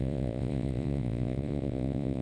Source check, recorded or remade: remade